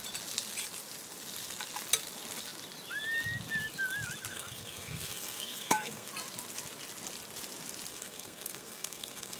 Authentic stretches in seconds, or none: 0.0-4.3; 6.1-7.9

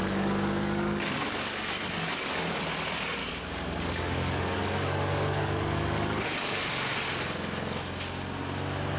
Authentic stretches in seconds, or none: 2.4-3.2; 6.7-9.0

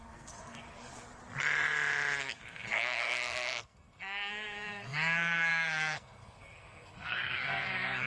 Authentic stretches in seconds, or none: 0.9-2.2

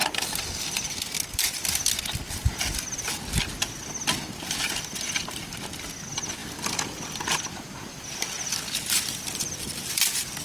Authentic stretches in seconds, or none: 0.0-6.4; 7.3-10.4

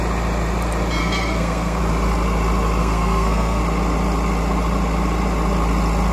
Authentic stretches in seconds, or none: 0.0-1.0; 1.8-2.8; 3.6-6.1

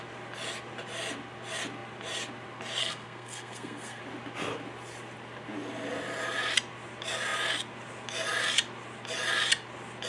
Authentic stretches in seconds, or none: 0.0-2.8; 4.0-10.1

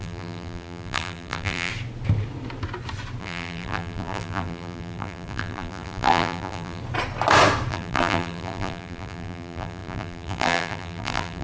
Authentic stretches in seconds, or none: 1.7-3.2; 6.8-7.7

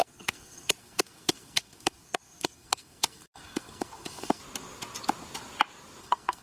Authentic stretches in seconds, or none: 4.4-6.0